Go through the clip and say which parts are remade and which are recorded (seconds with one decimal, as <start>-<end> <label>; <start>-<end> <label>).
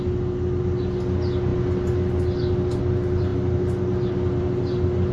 0.0-5.1 recorded